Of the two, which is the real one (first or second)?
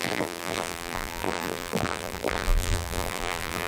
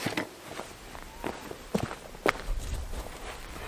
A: second